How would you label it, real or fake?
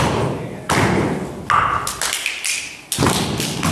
real